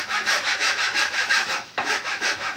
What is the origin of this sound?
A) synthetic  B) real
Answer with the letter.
A